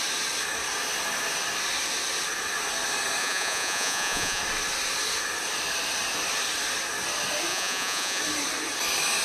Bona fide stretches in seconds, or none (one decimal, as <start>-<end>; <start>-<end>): 0.0-3.2; 4.4-7.5; 8.2-9.2